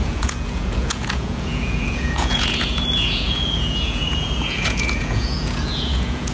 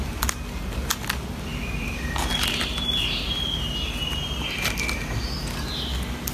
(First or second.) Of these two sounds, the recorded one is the second